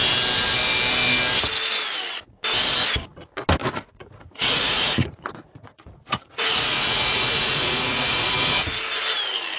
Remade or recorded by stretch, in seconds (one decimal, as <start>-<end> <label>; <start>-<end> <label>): 0.0-3.6 recorded; 3.6-8.6 remade; 8.6-9.6 recorded